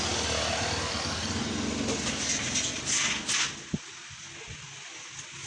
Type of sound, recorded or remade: recorded